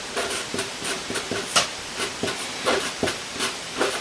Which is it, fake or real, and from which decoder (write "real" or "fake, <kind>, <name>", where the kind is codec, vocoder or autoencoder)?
fake, vocoder, BigVGAN v2